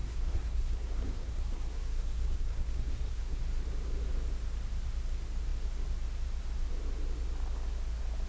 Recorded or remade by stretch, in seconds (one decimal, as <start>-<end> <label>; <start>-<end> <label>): 0.0-3.4 remade; 3.4-8.3 recorded